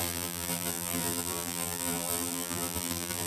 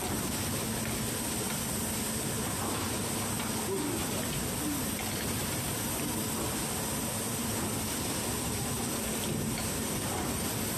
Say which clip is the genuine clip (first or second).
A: second